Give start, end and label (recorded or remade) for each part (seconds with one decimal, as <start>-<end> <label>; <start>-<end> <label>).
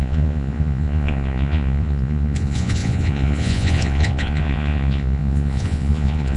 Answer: 0.0-6.4 remade